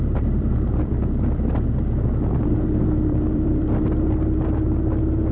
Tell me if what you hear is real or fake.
fake